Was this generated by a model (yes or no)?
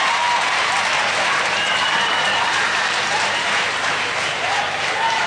yes